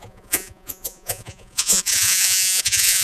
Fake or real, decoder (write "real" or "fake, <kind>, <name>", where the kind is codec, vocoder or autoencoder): fake, vocoder, Vocos